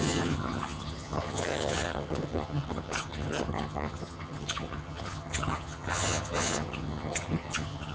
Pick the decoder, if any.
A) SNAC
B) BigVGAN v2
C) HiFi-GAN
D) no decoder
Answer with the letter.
C